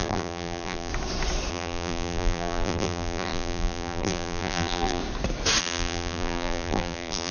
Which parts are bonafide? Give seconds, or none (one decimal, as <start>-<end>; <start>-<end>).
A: 0.9-1.5; 5.0-5.6